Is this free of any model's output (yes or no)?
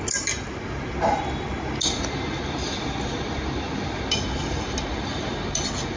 yes